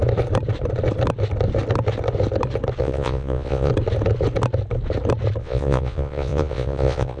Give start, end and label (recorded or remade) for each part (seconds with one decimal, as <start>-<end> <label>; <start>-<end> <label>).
0.0-2.8 recorded; 2.8-3.7 remade; 3.7-5.4 recorded; 5.4-7.2 remade